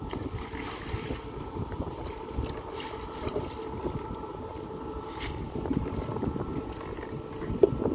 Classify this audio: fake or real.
real